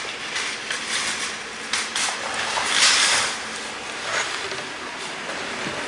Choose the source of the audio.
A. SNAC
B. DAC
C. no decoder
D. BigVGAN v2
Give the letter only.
C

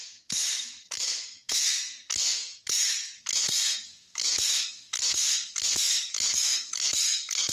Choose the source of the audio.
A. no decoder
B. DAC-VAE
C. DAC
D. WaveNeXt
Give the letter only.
B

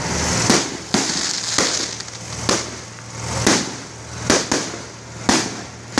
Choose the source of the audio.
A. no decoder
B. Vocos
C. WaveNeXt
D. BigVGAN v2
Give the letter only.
A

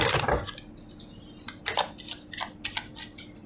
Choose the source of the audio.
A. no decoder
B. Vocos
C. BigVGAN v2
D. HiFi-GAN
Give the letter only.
A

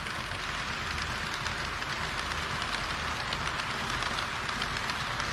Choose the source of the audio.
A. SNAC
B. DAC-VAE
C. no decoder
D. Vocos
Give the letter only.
C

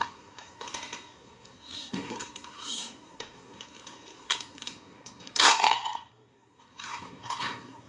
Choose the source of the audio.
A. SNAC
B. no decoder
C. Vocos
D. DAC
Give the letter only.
A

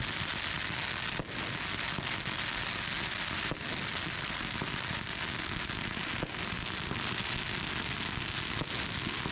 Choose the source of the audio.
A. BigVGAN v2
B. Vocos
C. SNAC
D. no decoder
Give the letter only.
D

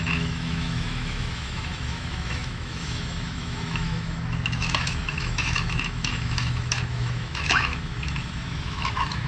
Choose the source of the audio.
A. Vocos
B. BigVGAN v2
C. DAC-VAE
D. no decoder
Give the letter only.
C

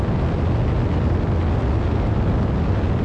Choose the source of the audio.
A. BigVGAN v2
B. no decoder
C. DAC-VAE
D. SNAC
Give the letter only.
B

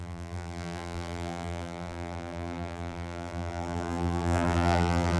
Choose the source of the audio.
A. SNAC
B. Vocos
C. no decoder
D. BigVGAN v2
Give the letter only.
D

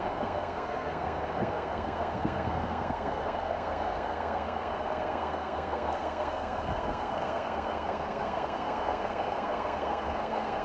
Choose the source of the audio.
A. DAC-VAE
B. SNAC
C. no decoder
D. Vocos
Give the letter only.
B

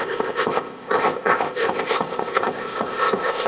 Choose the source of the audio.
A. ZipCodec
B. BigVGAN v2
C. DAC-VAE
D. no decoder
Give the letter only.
A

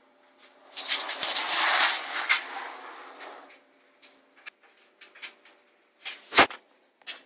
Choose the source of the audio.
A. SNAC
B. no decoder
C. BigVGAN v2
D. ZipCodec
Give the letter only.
B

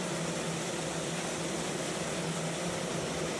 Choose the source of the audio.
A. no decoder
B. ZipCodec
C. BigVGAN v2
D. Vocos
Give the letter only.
A